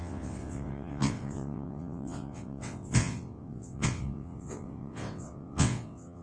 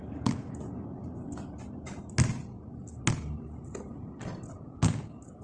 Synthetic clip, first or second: first